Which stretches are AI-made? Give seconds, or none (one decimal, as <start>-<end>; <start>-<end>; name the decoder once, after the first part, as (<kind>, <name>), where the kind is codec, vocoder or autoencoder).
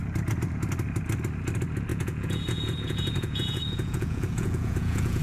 1.9-5.2 (vocoder, Vocos)